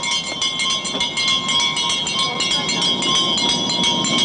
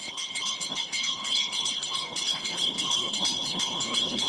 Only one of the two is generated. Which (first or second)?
second